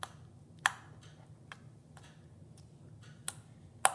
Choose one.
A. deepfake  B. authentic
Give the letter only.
B